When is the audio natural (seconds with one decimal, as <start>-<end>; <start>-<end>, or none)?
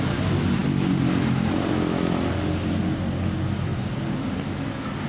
0.0-5.1